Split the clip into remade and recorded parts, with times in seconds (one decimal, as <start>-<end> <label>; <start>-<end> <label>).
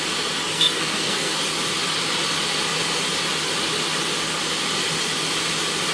0.0-0.5 recorded; 0.5-1.4 remade; 1.4-5.9 recorded